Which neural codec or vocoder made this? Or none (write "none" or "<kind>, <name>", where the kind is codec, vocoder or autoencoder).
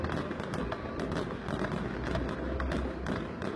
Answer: none